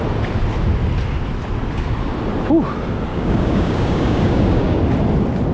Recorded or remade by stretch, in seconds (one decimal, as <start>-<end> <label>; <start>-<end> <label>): 0.0-3.1 recorded; 3.1-4.8 remade; 4.8-5.5 recorded